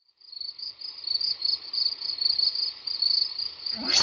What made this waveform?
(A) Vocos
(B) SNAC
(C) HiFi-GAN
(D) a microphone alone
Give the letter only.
D